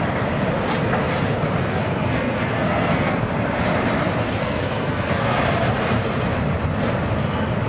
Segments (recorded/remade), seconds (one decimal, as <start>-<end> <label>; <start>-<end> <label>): 0.0-1.6 recorded; 1.6-3.3 remade; 3.3-4.4 recorded; 4.4-5.4 remade; 5.4-7.7 recorded